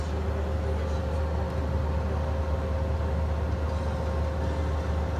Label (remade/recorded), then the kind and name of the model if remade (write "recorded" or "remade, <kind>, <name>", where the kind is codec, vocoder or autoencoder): recorded